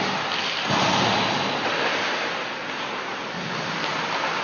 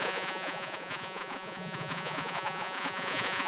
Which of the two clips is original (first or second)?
first